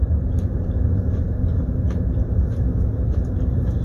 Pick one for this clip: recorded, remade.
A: remade